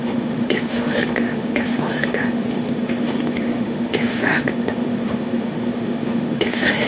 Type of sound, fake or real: fake